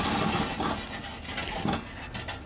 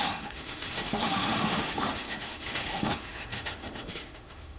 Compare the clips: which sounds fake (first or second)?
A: second